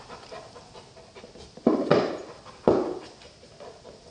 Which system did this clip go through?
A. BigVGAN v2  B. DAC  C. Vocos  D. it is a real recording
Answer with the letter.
D